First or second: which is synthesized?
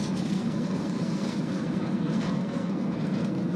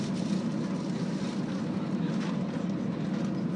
first